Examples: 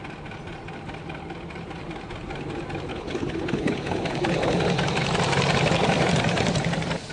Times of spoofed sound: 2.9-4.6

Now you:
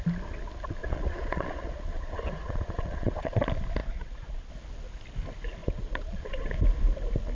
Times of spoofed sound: 0.8-3.4; 3.8-4.5; 5.6-6.5

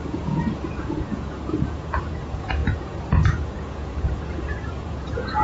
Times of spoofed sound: 0.0-5.4

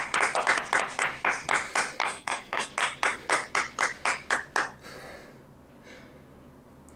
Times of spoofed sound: 2.0-2.7